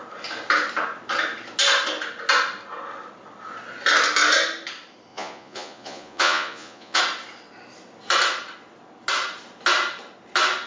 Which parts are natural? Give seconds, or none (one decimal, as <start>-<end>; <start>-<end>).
0.0-5.1; 7.0-10.7